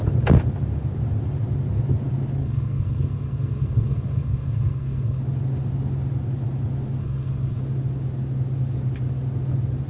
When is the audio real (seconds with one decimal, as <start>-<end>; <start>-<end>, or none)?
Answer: 0.0-2.4; 5.2-7.0; 7.6-9.9